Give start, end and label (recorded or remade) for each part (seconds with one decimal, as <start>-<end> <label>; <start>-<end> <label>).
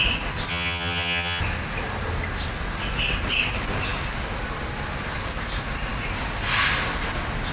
0.0-0.5 recorded; 0.5-1.4 remade; 1.4-7.5 recorded